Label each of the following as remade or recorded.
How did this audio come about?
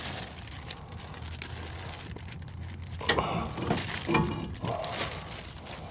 recorded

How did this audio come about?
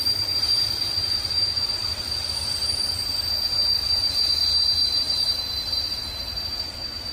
recorded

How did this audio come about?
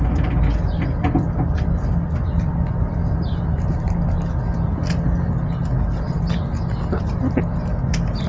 recorded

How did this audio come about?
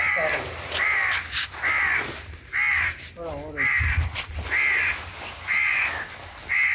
recorded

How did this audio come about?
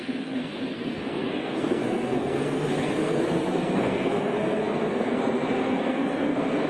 remade